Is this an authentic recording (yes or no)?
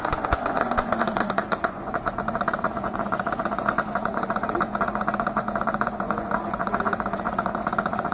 no